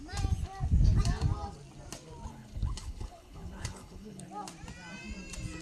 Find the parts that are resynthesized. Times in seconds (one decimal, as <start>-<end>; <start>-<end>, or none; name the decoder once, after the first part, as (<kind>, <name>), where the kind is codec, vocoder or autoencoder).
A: 2.3-4.3 (codec, HILCodec)